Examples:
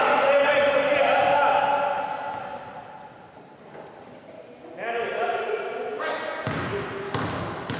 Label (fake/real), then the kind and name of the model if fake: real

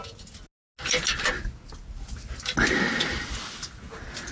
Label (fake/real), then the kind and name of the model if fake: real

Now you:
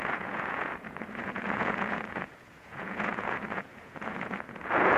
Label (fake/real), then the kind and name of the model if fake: fake, vocoder, Vocos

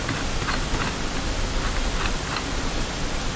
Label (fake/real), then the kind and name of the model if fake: real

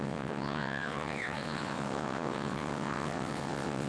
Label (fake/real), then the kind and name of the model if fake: fake, vocoder, WaveNeXt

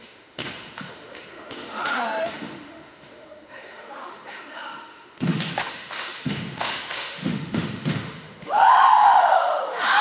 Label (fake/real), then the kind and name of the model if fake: fake, autoencoder, DAC-VAE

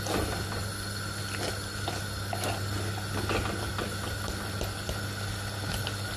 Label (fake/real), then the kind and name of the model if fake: real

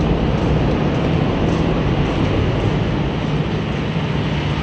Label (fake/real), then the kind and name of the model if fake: real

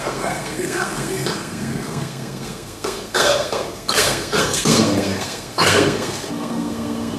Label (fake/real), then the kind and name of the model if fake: fake, codec, SNAC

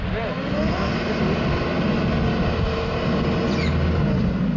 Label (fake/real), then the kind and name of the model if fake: real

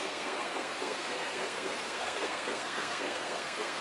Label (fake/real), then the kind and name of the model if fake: fake, codec, SNAC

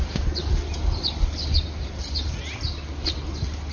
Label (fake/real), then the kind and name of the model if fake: real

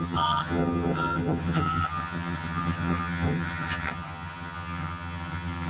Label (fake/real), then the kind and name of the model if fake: fake, vocoder, HiFi-GAN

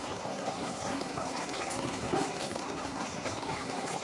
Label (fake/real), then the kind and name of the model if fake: fake, codec, SNAC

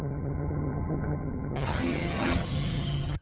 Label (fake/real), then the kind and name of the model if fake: fake, vocoder, HiFi-GAN